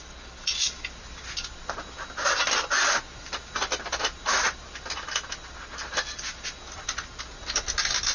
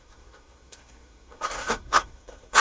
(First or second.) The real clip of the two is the first